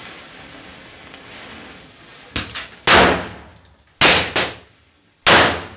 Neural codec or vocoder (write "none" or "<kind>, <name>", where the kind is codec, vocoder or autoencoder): none